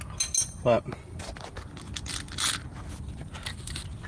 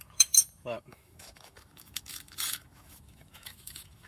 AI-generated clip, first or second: second